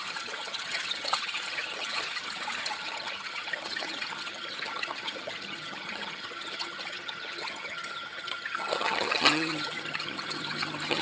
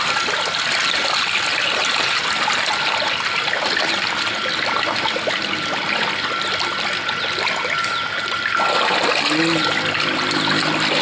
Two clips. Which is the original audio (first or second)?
second